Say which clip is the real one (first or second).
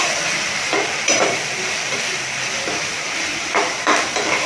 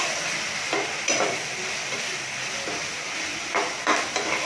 second